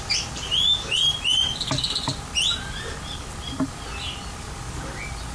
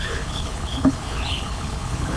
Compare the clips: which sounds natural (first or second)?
first